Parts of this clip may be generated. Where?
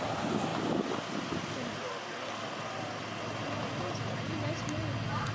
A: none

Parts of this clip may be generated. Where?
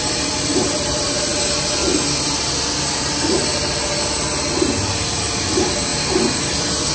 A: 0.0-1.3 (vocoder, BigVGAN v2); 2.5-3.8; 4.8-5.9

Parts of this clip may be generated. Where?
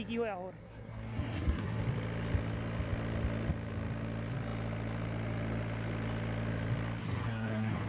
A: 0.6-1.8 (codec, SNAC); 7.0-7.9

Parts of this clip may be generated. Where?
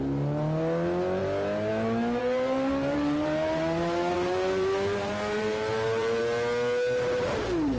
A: 2.2-6.2 (vocoder, BigVGAN v2)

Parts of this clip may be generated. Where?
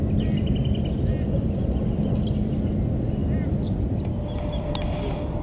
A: none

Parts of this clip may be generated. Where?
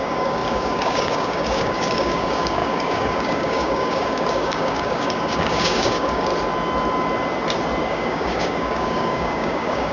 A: 0.0-6.3 (codec, DAC); 7.8-9.9